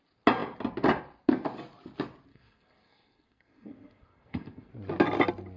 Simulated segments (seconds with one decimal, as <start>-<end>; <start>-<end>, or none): 2.3-4.7